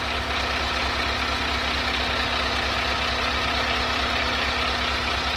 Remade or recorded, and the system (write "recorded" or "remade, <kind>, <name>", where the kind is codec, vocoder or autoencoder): recorded